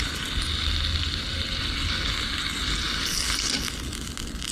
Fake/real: real